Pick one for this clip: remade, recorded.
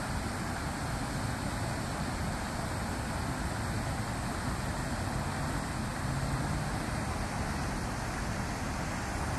recorded